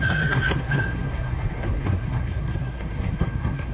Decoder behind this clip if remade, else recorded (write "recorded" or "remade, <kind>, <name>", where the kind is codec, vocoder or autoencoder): remade, codec, SNAC